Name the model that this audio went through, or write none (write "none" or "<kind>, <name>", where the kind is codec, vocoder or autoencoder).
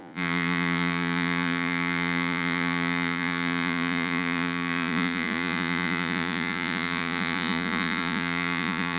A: vocoder, Vocos